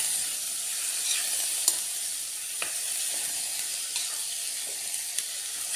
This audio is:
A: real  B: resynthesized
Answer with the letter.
A